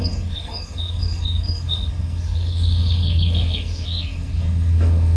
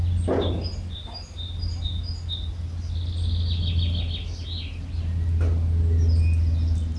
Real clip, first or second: second